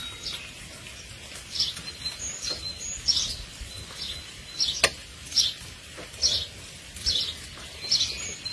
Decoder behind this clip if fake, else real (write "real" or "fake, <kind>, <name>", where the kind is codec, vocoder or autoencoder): real